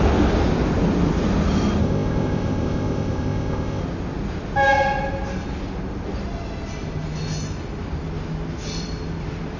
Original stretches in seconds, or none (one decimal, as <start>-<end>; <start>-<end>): 0.0-1.8; 3.8-9.6